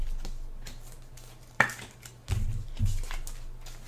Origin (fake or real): real